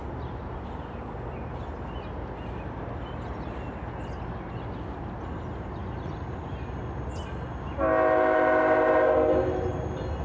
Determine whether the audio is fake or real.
real